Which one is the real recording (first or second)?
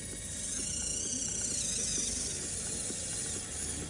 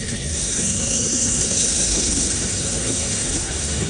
first